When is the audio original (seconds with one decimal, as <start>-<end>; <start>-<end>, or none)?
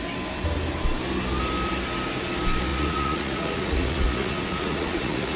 0.0-2.7